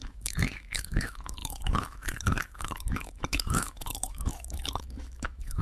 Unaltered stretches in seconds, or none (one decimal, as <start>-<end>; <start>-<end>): none